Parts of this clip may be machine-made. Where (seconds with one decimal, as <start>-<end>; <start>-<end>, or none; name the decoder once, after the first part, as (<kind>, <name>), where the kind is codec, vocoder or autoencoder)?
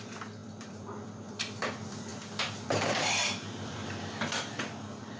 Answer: 0.0-5.2 (vocoder, BigVGAN v2)